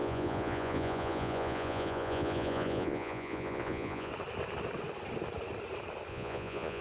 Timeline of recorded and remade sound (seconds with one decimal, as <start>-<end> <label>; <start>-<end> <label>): 0.0-4.1 remade; 4.1-6.1 recorded; 6.1-6.8 remade